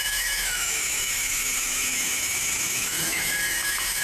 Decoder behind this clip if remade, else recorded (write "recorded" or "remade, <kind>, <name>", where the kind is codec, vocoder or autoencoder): remade, autoencoder, DAC-VAE